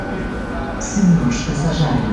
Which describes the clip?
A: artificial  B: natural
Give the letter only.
B